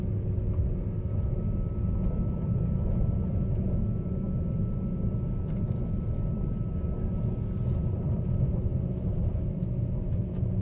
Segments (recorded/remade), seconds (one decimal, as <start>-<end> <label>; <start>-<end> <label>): 0.0-10.6 recorded